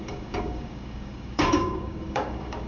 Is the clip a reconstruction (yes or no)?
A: yes